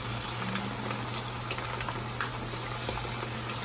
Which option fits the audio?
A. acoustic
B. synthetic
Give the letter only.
A